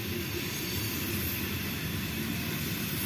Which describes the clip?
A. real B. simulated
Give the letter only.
A